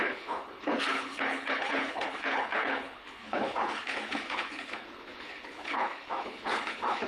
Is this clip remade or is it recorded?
remade